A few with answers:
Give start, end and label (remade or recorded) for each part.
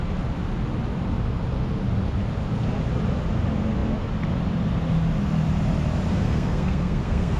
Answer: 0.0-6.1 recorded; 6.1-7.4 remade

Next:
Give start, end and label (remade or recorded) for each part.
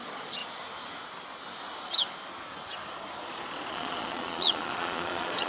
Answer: 0.0-0.4 remade; 0.4-3.7 recorded; 3.7-5.5 remade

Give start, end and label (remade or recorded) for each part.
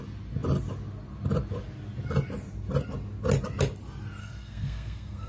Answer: 0.0-4.2 recorded; 4.2-5.3 remade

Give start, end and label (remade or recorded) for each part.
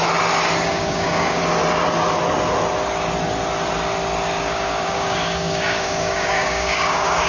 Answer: 0.0-0.7 recorded; 0.7-1.4 remade; 1.4-4.4 recorded; 4.4-7.3 remade